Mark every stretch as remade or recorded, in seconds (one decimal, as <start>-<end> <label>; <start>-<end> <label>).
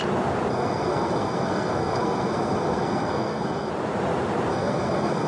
0.0-0.5 recorded; 0.5-3.7 remade; 3.7-4.5 recorded; 4.5-5.3 remade